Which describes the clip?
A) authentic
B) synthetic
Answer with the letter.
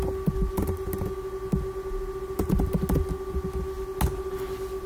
A